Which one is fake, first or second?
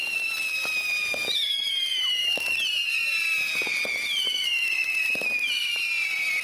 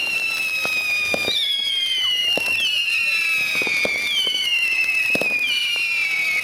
first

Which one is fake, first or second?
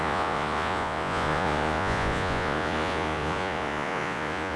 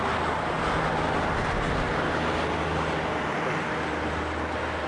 first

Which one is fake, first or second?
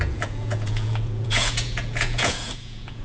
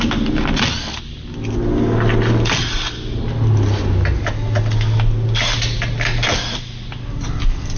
first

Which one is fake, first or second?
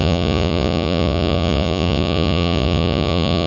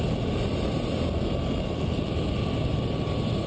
first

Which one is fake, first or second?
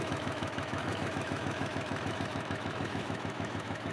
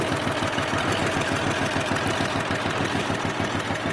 first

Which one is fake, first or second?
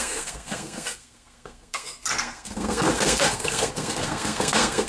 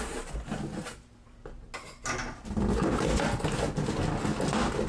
first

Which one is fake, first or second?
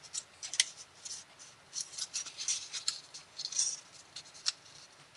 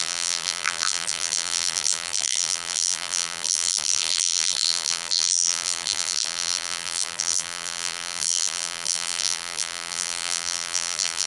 second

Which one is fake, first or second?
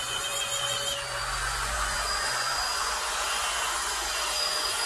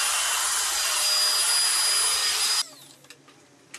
first